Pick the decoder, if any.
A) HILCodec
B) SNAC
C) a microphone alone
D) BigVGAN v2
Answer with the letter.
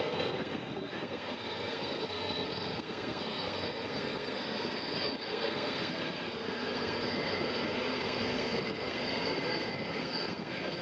B